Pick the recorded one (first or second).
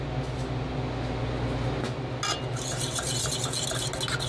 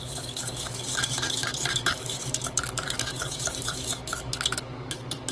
first